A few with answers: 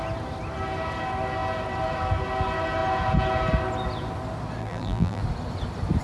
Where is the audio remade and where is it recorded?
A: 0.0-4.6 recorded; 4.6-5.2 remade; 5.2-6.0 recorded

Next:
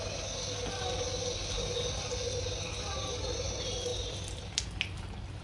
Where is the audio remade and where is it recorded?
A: 0.0-5.4 recorded

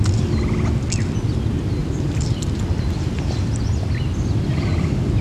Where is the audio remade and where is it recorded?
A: 0.0-1.8 recorded; 1.8-2.5 remade; 2.5-5.2 recorded

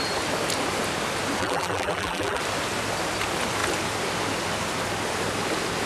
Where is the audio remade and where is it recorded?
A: 0.0-1.4 recorded; 1.4-2.4 remade; 2.4-5.9 recorded

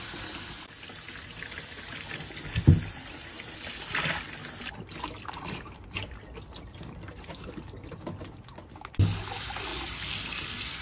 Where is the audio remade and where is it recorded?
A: 0.0-10.8 recorded

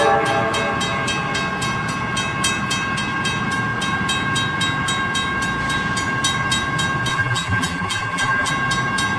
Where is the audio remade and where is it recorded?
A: 0.0-7.1 recorded; 7.1-8.5 remade; 8.5-9.2 recorded

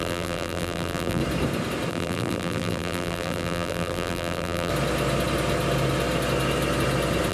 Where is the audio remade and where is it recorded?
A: 0.0-1.2 remade; 1.2-1.9 recorded; 1.9-4.7 remade; 4.7-7.3 recorded